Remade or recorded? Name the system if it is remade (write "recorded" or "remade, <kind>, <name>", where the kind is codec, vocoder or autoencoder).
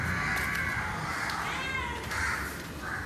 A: recorded